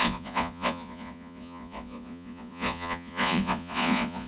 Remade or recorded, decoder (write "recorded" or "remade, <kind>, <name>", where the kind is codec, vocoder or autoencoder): remade, vocoder, Vocos